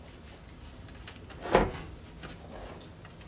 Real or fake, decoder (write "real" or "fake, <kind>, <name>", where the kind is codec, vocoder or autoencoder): real